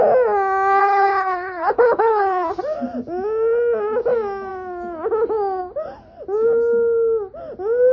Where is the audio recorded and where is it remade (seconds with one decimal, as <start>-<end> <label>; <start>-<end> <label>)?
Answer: 0.0-0.8 recorded; 0.8-2.6 remade; 2.6-7.9 recorded